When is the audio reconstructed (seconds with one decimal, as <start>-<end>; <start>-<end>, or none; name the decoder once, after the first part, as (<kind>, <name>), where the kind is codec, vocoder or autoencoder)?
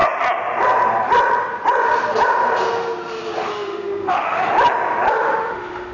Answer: 3.5-4.5 (autoencoder, DAC-VAE); 5.1-5.9